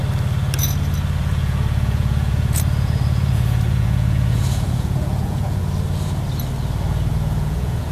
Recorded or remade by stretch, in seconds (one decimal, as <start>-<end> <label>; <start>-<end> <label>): 0.0-1.2 recorded; 1.2-5.6 remade; 5.6-7.1 recorded; 7.1-7.9 remade